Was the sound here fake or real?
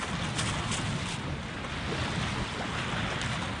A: real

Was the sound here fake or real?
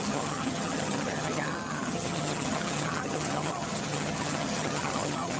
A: fake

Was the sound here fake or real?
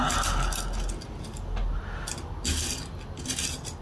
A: real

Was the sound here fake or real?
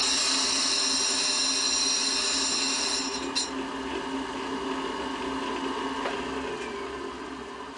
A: real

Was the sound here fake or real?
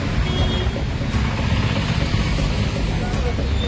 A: real